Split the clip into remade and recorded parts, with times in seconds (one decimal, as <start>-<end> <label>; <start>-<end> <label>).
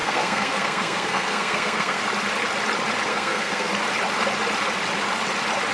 0.0-2.0 remade; 2.0-3.1 recorded; 3.1-3.7 remade; 3.7-5.7 recorded